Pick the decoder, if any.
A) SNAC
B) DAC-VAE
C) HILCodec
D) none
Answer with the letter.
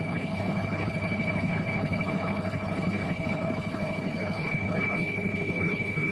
C